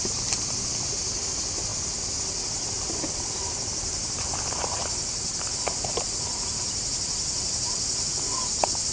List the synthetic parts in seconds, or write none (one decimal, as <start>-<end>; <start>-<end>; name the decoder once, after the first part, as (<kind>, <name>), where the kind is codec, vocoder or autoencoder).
none